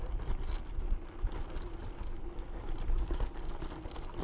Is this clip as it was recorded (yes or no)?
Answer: yes